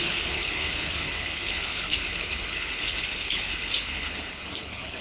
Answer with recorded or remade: remade